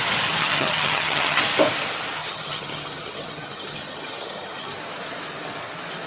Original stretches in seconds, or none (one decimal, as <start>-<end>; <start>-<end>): 0.0-0.4; 1.4-2.2; 4.8-6.1